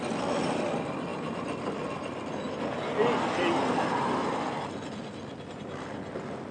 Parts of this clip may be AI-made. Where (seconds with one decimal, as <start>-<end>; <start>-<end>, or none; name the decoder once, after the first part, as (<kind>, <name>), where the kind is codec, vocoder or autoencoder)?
none